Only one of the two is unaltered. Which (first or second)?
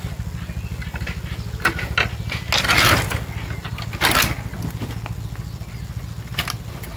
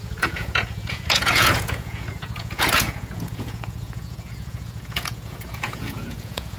first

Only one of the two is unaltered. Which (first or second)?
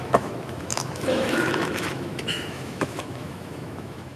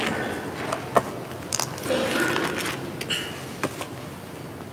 second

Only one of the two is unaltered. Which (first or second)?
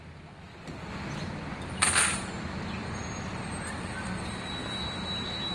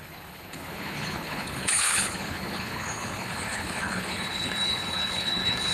first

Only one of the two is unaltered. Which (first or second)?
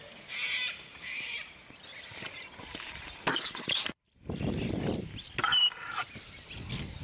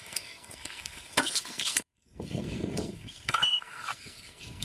first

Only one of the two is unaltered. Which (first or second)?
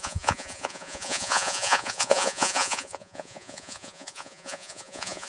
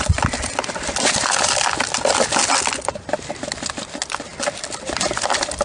second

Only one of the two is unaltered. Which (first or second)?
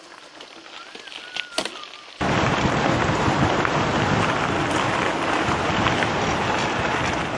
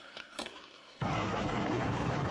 first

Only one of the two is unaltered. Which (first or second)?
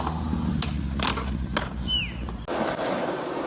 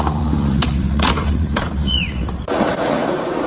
first